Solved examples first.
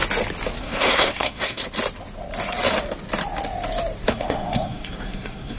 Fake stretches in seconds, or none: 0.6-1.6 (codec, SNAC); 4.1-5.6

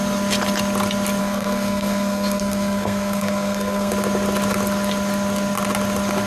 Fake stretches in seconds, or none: 1.2-3.9 (codec, SNAC)

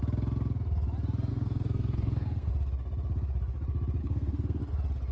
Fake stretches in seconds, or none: 1.3-2.5 (codec, SNAC); 4.0-4.6

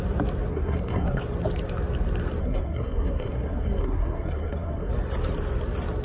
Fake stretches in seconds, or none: 0.5-1.2 (codec, SNAC); 2.4-4.9

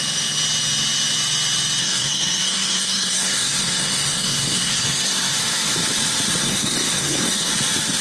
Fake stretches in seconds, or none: 1.8-5.3 (codec, SNAC); 6.4-7.5

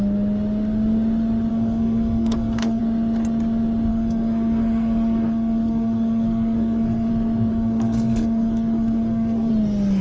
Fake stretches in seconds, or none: 1.5-2.8 (codec, SNAC); 3.9-7.1; 7.5-9.5

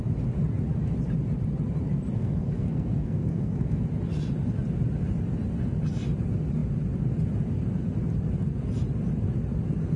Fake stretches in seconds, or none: 2.2-3.8 (codec, SNAC)

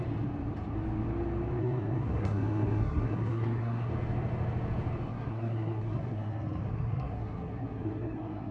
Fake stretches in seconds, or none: 1.6-3.9 (codec, SNAC); 5.1-8.5